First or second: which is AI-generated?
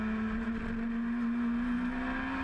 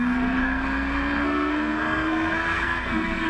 second